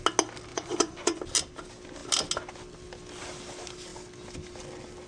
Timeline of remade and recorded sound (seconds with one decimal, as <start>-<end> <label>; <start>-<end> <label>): 0.0-0.5 recorded; 0.5-1.2 remade; 1.2-5.1 recorded

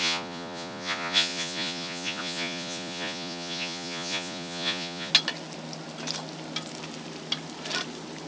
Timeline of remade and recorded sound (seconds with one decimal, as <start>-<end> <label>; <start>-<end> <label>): 0.0-5.1 remade; 5.1-8.3 recorded

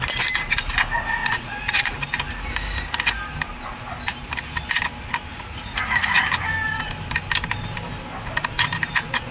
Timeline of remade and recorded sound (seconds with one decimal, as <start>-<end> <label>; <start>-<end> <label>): 0.0-1.2 recorded; 1.2-1.9 remade; 1.9-5.3 recorded; 5.3-6.2 remade; 6.2-9.3 recorded

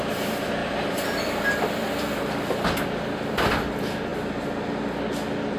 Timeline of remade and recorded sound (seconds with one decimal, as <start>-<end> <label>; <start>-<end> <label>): 0.0-0.6 recorded; 0.6-3.2 remade; 3.2-5.6 recorded

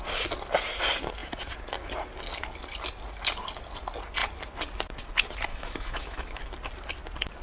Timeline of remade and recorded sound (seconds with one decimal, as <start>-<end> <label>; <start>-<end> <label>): 0.0-5.5 recorded; 5.5-6.4 remade; 6.4-7.4 recorded

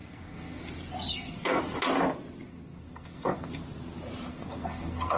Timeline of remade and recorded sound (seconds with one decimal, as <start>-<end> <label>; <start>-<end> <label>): 0.0-0.6 remade; 0.6-1.1 recorded; 1.1-1.6 remade; 1.6-2.5 recorded; 2.5-3.5 remade; 3.5-4.3 recorded; 4.3-5.2 remade